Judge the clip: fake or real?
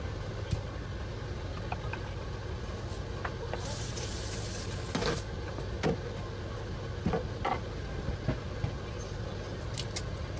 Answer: real